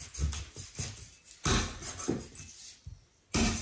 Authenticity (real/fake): real